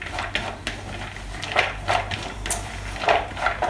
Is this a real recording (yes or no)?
yes